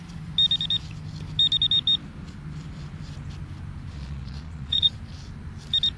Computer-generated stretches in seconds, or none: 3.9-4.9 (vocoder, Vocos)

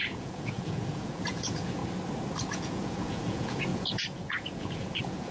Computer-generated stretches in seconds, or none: 0.0-1.8 (vocoder, Vocos); 2.5-5.3

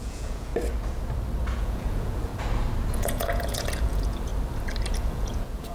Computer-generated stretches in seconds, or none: 0.0-0.5 (vocoder, Vocos); 1.6-2.3; 2.9-4.3; 4.9-5.7

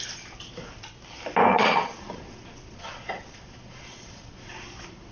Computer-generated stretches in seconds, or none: 1.5-4.5 (vocoder, Vocos)

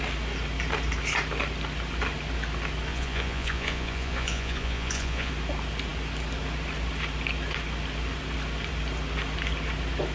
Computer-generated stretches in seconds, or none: 2.9-5.3 (vocoder, Vocos)

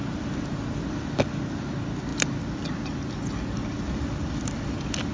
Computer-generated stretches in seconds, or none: none

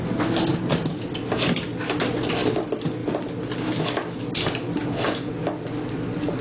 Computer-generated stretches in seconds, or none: 0.5-1.1 (vocoder, Vocos); 4.8-5.3